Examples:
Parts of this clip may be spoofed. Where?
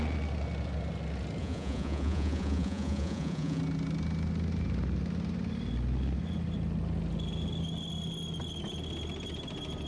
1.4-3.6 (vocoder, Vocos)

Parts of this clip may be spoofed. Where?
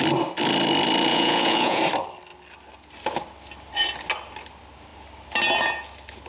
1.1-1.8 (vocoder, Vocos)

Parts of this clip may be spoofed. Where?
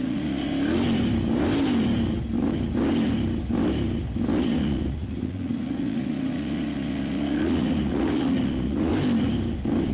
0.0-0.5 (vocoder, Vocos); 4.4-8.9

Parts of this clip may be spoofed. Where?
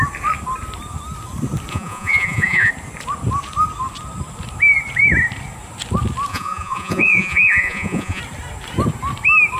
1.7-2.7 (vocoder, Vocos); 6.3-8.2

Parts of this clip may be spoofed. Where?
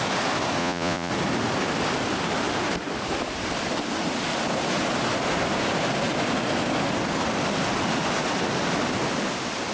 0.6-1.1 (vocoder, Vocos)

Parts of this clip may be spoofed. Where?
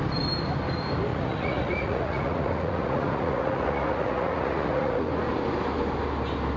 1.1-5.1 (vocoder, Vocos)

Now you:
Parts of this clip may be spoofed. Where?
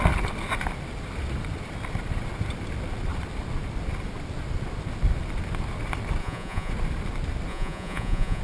6.2-6.7 (vocoder, Vocos); 7.5-8.4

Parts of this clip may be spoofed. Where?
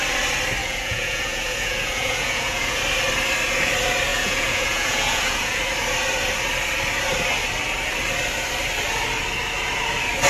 0.6-2.8 (vocoder, Vocos); 4.1-5.6